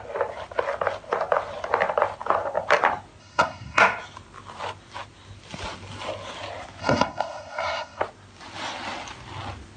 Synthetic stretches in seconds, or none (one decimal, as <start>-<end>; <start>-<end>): 3.2-3.8; 6.8-8.0